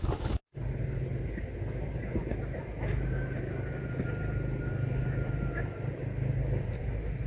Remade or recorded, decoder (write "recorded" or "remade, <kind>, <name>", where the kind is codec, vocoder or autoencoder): recorded